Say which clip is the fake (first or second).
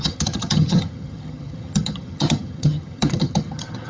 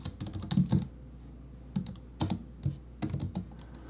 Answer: first